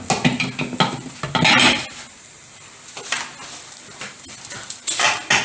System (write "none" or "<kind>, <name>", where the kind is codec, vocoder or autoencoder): none